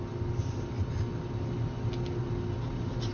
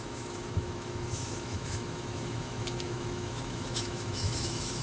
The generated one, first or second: second